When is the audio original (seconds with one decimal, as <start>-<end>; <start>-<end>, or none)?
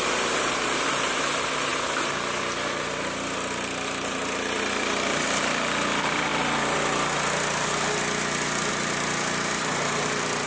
6.3-8.7